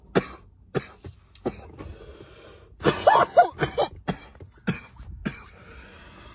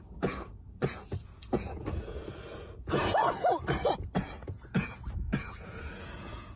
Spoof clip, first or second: second